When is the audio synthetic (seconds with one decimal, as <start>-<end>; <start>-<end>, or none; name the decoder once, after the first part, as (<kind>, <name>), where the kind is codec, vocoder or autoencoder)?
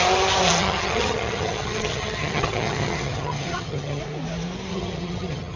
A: 0.6-4.0 (vocoder, HiFi-GAN); 4.7-5.6